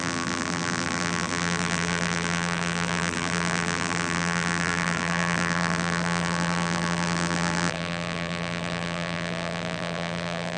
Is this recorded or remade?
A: remade